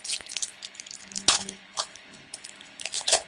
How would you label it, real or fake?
fake